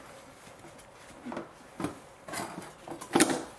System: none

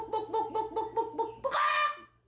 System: none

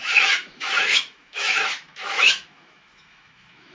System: autoencoder, DAC-VAE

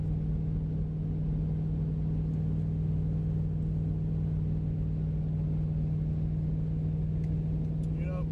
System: none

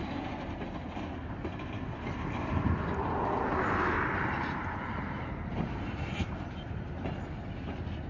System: none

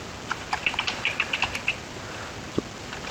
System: none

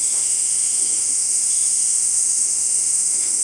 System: autoencoder, DAC-VAE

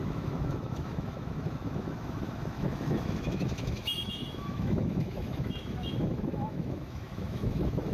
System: autoencoder, DAC-VAE